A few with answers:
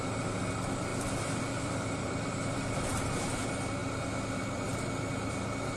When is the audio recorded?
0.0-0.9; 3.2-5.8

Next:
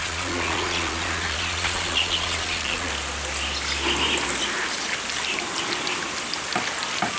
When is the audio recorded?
2.9-7.2

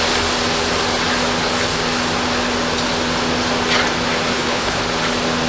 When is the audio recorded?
0.0-4.3; 4.8-5.5

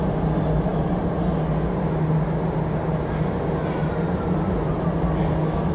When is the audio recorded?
0.0-3.8; 5.0-5.7

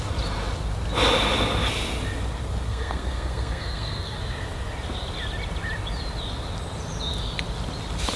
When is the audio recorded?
0.0-2.7; 4.2-8.2